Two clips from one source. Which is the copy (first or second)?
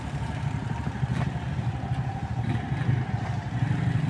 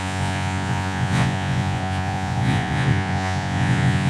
second